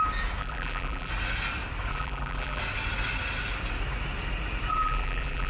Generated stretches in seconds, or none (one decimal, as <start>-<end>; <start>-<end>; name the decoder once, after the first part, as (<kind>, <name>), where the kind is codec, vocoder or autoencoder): 0.4-1.1 (vocoder, BigVGAN v2); 1.9-2.6; 4.7-5.5